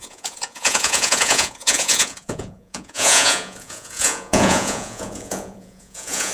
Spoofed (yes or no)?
yes